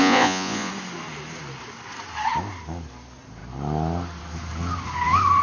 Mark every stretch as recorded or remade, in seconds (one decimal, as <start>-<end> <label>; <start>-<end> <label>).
0.0-0.7 remade; 0.7-5.4 recorded